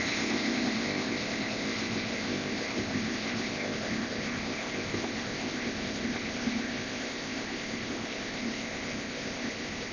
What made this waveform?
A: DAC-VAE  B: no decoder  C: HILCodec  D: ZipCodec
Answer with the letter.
D